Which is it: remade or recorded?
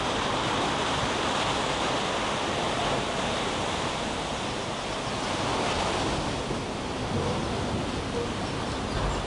remade